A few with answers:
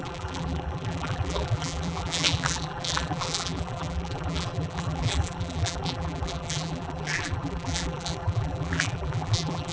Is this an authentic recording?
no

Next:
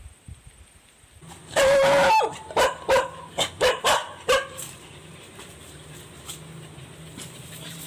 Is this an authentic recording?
yes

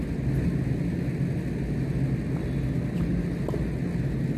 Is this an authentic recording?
yes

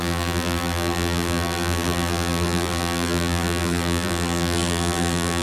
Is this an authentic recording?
no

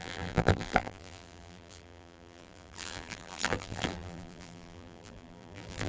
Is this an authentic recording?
no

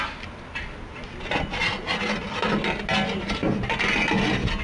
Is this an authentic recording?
yes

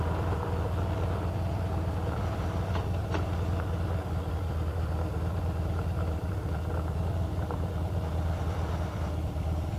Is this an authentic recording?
no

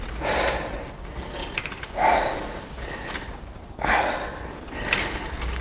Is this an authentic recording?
yes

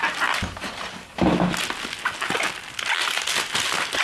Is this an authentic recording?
yes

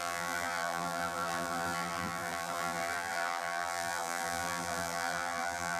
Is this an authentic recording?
no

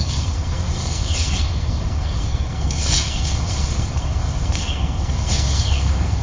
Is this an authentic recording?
no